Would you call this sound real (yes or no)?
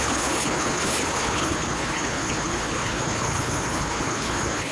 no